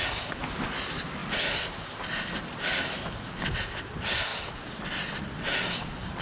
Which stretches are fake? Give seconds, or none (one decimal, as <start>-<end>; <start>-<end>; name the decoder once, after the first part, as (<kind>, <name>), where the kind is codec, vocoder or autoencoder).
none